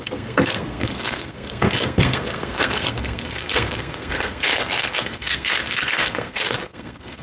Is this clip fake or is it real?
fake